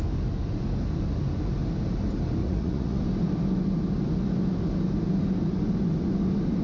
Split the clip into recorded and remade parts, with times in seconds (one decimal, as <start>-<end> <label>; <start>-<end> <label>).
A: 0.0-2.4 recorded; 2.4-3.0 remade; 3.0-6.6 recorded